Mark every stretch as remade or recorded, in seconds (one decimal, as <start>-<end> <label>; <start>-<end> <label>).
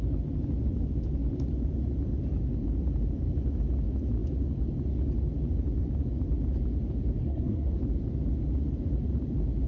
0.0-7.2 recorded; 7.2-7.8 remade; 7.8-9.7 recorded